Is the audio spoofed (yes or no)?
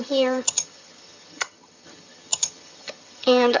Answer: yes